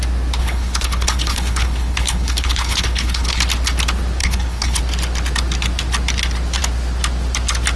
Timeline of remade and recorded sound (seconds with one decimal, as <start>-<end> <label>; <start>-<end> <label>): 0.0-0.4 recorded; 0.4-3.4 remade; 3.4-4.2 recorded; 4.2-4.8 remade; 4.8-7.8 recorded